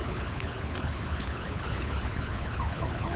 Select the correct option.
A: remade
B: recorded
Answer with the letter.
A